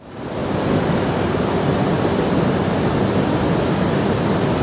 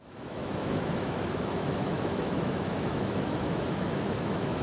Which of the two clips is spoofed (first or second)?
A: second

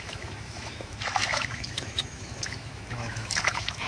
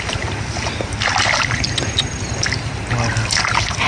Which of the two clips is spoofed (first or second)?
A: first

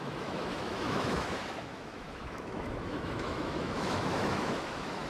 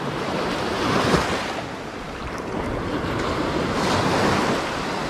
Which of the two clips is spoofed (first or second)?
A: first